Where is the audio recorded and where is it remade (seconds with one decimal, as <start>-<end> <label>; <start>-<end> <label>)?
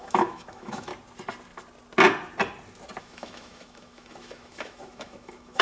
0.0-0.9 remade; 0.9-3.0 recorded; 3.0-5.6 remade